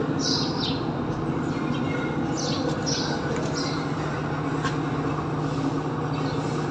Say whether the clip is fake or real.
real